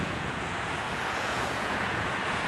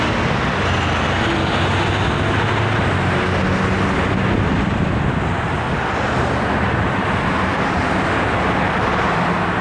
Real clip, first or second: second